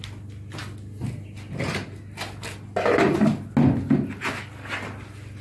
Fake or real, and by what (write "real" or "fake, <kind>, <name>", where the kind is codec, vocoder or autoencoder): real